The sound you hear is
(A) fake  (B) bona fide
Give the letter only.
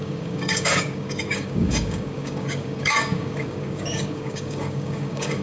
A